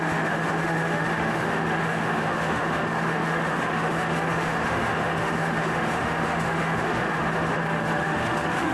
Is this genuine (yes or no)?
no